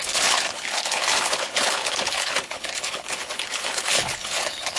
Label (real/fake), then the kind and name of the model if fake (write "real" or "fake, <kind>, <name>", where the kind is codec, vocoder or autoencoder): fake, codec, HILCodec